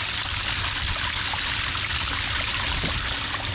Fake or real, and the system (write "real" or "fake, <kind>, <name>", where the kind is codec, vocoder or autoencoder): real